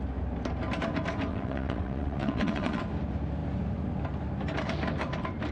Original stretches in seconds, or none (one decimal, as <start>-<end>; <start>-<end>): 0.0-1.3; 2.8-5.5